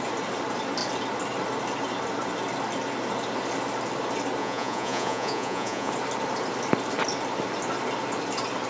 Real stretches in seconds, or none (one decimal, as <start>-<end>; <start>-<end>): 0.0-4.4; 5.9-8.7

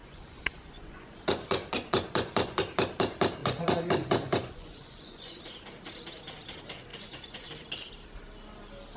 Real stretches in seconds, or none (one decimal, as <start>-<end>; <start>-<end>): 2.6-3.4; 5.4-6.9; 7.5-9.0